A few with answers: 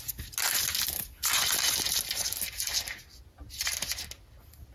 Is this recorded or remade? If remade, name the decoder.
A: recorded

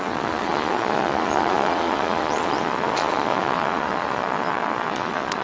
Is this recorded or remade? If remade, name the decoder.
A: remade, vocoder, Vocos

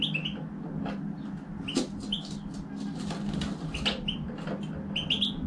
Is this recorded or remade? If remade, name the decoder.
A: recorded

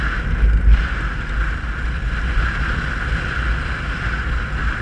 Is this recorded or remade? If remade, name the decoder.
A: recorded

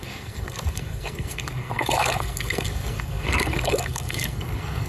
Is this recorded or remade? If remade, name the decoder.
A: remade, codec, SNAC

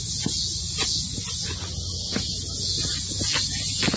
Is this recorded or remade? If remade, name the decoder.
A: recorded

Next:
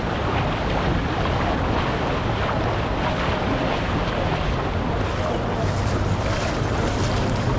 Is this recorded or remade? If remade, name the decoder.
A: recorded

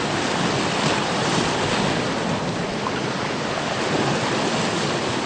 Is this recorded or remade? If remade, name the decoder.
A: recorded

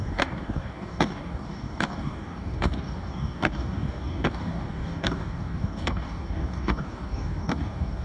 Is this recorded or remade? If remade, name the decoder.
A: remade, codec, DAC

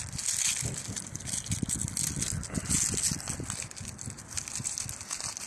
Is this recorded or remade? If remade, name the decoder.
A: recorded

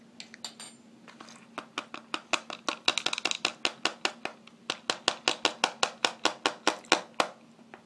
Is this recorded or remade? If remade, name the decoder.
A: recorded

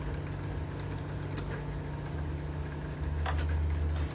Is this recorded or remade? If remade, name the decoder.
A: recorded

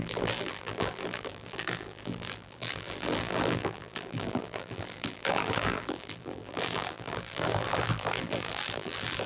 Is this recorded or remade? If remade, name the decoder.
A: remade, vocoder, BigVGAN v2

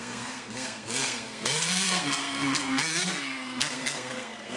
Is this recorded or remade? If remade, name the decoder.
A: remade, codec, SNAC